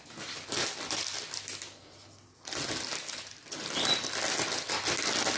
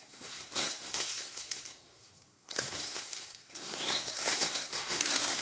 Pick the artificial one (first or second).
second